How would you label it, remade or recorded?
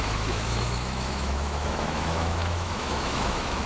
remade